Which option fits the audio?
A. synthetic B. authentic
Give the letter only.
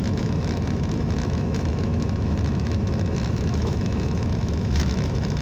A